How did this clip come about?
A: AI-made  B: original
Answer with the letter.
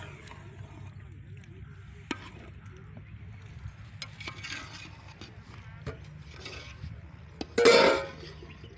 B